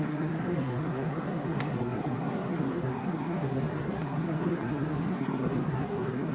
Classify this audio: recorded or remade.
remade